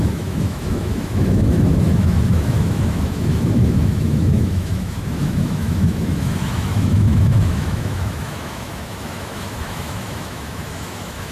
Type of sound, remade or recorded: remade